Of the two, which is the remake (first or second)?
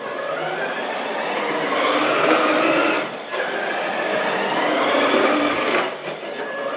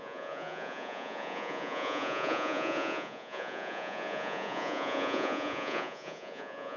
second